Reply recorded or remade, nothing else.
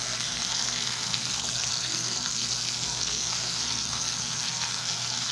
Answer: remade